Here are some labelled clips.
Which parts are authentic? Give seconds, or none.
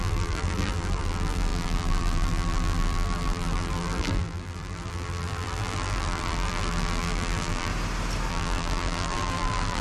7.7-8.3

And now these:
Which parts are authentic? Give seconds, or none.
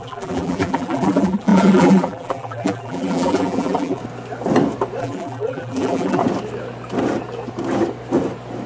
4.0-5.0; 6.2-8.7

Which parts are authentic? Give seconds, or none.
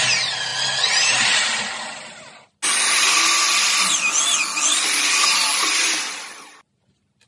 0.0-7.3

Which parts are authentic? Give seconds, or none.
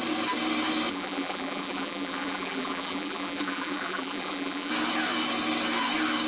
0.0-0.9; 4.7-6.3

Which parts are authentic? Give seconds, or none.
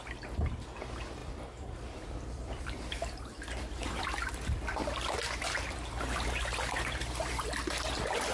0.0-1.2; 4.3-8.3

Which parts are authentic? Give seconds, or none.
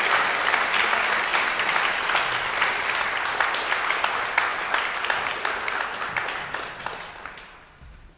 0.0-1.3; 1.9-4.5; 5.5-8.2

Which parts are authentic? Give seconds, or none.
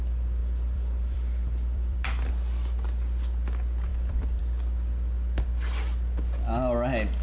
0.0-0.4; 2.3-3.9; 4.4-7.2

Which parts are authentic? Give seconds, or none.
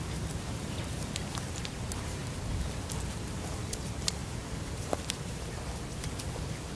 2.2-3.2